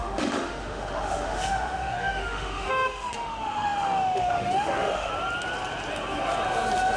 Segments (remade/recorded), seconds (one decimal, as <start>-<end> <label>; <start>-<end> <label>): 0.0-5.1 remade; 5.1-7.0 recorded